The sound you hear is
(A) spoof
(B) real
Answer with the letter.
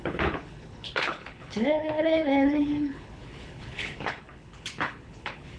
A